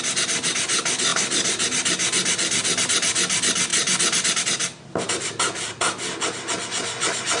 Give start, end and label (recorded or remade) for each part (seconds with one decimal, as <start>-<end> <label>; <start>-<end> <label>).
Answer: 0.0-7.4 recorded